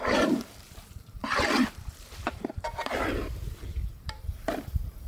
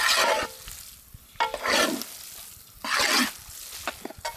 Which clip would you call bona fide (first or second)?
second